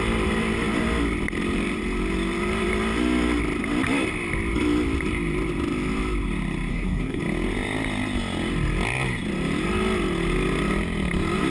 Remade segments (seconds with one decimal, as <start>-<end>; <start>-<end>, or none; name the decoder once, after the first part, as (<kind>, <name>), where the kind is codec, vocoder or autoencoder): 6.7-7.2 (codec, SNAC)

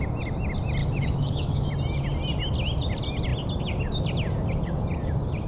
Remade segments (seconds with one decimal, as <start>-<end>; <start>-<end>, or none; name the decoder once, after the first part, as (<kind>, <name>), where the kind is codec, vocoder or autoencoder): 0.8-1.7 (autoencoder, DAC-VAE)

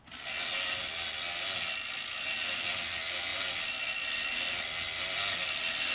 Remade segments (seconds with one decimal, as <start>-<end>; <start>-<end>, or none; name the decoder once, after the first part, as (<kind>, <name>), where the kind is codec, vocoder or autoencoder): none

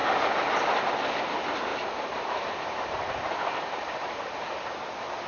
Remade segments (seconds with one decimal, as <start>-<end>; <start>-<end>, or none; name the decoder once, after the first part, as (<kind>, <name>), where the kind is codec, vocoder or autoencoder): 1.7-5.3 (vocoder, BigVGAN v2)

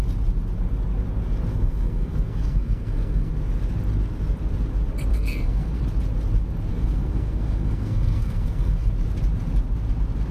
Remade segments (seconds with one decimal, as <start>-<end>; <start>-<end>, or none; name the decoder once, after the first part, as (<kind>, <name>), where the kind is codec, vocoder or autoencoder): 1.5-3.3 (codec, SNAC); 5.1-5.8; 6.7-8.9

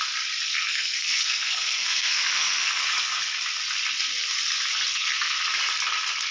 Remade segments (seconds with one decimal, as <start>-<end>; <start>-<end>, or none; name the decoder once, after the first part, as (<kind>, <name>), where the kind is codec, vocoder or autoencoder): 0.5-2.8 (codec, SNAC); 4.9-5.4

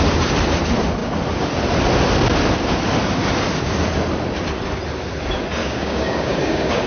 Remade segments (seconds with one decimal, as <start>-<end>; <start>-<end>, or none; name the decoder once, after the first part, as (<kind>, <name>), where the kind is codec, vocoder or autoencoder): 5.6-6.9 (codec, DAC)

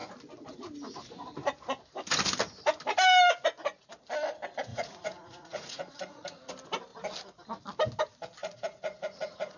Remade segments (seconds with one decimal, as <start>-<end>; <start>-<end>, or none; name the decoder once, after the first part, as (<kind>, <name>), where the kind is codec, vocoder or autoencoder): 4.7-6.5 (vocoder, Vocos); 8.4-9.6